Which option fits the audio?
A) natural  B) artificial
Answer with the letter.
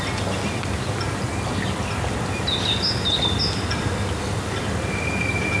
A